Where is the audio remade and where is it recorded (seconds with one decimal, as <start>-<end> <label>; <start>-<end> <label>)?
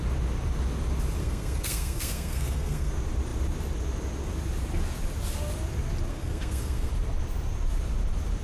0.0-1.2 recorded; 1.2-2.9 remade; 2.9-6.1 recorded; 6.1-6.9 remade; 6.9-8.4 recorded